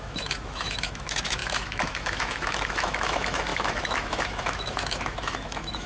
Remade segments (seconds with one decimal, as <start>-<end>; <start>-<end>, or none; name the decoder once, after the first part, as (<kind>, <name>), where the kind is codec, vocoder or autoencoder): 0.0-5.9 (autoencoder, DAC-VAE)